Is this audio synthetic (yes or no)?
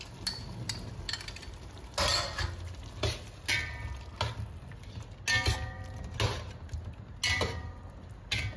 no